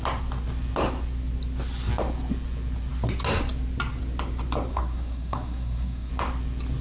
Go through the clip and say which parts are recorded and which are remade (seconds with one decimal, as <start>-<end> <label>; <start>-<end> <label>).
0.0-4.7 recorded; 4.7-6.1 remade; 6.1-6.8 recorded